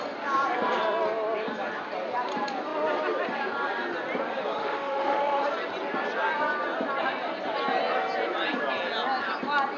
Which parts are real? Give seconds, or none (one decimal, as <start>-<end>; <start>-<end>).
0.0-4.6; 5.4-9.8